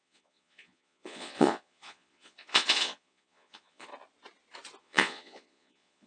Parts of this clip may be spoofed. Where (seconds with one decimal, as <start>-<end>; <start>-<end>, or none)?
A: 0.0-3.9; 4.8-6.1